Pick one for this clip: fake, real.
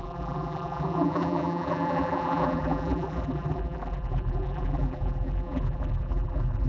fake